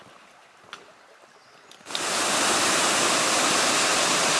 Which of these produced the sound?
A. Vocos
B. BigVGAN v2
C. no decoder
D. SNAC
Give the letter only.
C